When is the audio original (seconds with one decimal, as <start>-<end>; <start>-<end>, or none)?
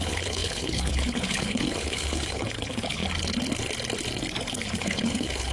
3.0-4.5